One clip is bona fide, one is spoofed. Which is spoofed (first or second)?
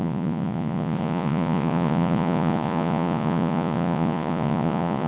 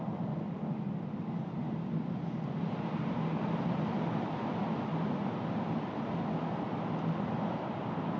first